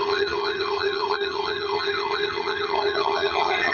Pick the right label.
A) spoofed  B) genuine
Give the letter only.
A